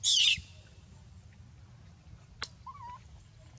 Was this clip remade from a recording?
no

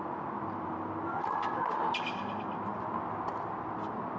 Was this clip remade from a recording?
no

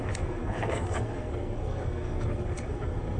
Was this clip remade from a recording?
yes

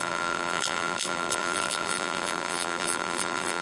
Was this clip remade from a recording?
yes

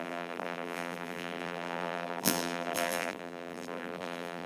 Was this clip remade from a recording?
yes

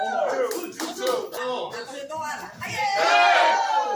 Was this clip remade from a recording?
yes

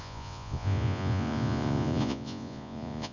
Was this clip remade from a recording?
yes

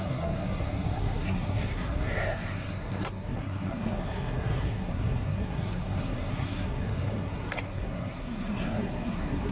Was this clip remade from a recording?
yes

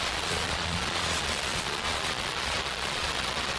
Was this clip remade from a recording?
yes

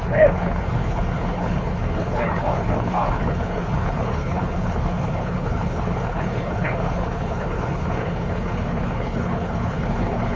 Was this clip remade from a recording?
yes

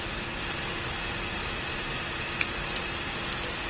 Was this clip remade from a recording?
no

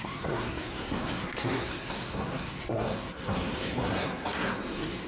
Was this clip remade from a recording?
yes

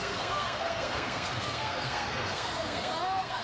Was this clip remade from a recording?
yes